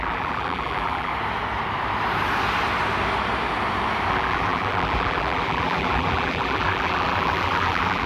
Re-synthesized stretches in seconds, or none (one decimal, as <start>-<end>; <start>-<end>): 0.0-1.1; 4.1-8.1

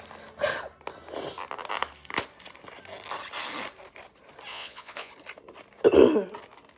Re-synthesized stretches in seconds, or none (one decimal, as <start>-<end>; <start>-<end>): 4.5-5.1

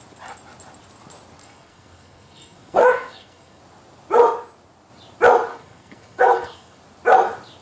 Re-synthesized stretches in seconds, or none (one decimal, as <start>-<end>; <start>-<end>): 1.4-3.6; 5.5-6.8

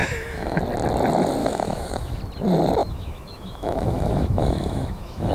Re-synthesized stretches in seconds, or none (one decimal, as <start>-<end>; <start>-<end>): 0.0-0.6; 1.4-2.2; 2.8-5.3

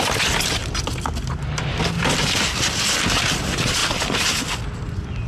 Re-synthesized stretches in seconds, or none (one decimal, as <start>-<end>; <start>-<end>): none